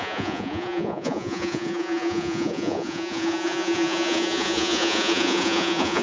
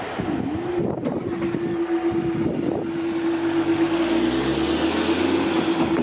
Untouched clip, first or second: second